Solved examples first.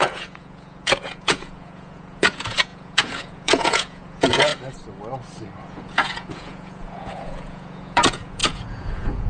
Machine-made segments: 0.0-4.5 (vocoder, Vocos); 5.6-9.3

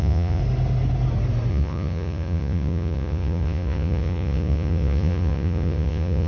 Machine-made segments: 0.0-0.4 (vocoder, Vocos); 1.5-6.3

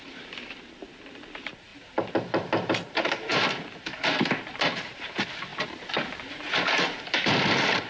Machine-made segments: 0.0-7.9 (vocoder, BigVGAN v2)

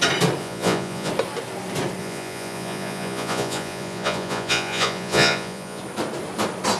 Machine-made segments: 0.4-1.1 (vocoder, Vocos); 2.0-5.8

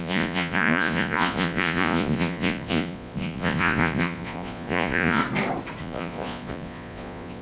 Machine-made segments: 0.0-5.2 (vocoder, Vocos); 5.8-7.4

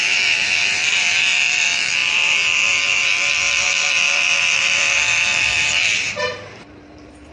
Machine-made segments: 0.0-7.3 (vocoder, BigVGAN v2)

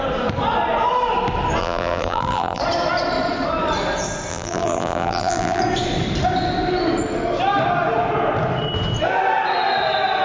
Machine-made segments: 1.6-2.6 (vocoder, BigVGAN v2); 4.3-5.6

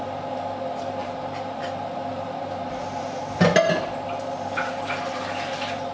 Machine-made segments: 1.0-1.6 (vocoder, BigVGAN v2); 2.1-3.5